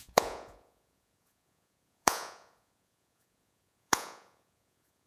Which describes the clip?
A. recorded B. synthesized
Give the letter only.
B